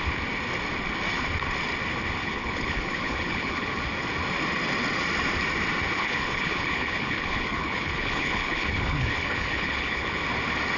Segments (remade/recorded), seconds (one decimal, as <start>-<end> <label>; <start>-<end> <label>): 0.0-2.2 recorded; 2.2-3.8 remade; 3.8-6.0 recorded; 6.0-10.2 remade; 10.2-10.8 recorded